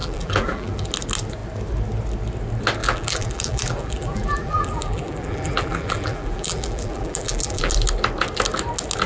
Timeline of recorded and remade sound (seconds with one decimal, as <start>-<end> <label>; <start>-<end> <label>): 0.0-0.9 remade; 0.9-2.8 recorded; 2.8-7.7 remade; 7.7-9.1 recorded